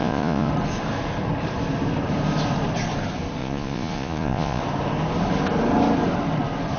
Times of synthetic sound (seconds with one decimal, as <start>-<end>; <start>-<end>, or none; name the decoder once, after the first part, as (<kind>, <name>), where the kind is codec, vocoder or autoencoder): 0.0-0.5 (vocoder, Vocos); 3.4-4.6

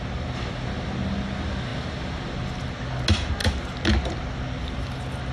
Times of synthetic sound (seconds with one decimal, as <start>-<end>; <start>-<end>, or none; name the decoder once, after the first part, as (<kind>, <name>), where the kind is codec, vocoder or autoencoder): none